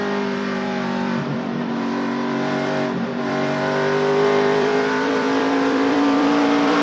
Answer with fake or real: fake